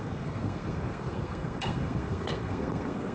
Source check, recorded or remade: remade